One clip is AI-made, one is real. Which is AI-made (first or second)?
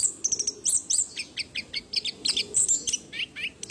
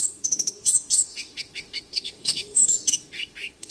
second